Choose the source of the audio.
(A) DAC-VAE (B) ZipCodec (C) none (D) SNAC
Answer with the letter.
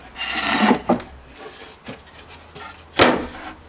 C